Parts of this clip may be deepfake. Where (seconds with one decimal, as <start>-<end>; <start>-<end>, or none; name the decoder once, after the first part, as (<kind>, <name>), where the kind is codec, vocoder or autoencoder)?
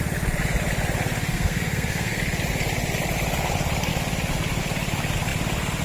1.3-2.2 (codec, SNAC)